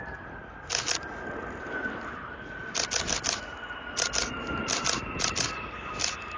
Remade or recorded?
recorded